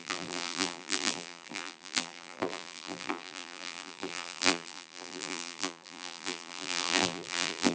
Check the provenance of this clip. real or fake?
fake